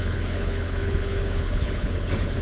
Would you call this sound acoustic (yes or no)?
no